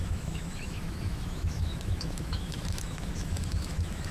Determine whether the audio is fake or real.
fake